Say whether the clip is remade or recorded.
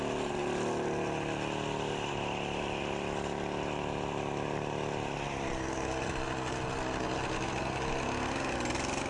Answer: recorded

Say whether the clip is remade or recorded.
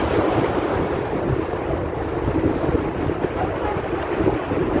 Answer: remade